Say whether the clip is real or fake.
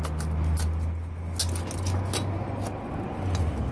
real